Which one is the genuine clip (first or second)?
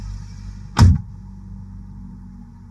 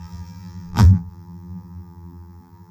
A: first